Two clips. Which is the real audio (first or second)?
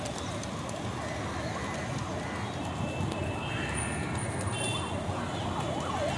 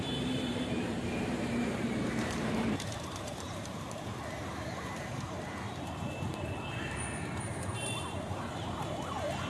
first